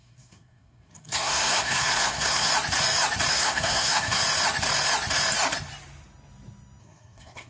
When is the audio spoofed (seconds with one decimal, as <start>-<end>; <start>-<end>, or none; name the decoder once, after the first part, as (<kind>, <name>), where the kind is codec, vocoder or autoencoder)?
0.0-2.5 (codec, SNAC); 3.3-4.2; 6.8-7.5